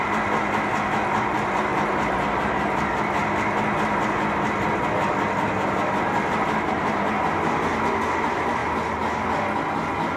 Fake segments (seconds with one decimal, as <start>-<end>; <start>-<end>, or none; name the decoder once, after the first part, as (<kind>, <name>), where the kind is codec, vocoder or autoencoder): 1.7-2.5 (vocoder, BigVGAN v2)